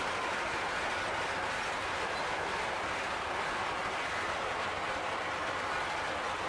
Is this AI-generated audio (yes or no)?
no